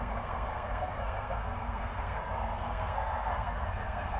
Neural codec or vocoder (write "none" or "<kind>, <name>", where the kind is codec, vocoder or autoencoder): codec, SNAC